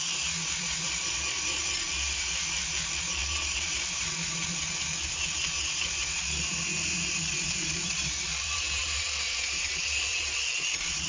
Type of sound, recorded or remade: remade